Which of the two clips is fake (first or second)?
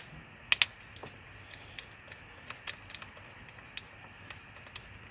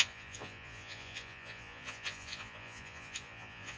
second